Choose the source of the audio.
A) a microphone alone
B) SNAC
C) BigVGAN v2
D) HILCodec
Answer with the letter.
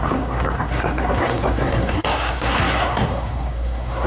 B